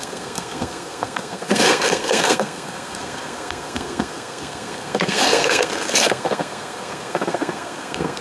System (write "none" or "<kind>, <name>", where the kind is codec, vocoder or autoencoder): codec, SNAC